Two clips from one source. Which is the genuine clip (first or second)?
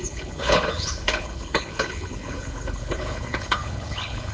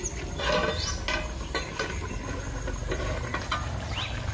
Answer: second